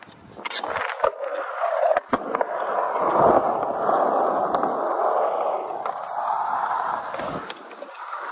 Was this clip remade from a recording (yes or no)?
no